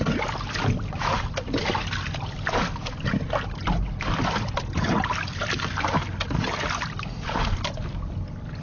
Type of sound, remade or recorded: recorded